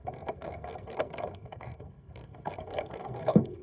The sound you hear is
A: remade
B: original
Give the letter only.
A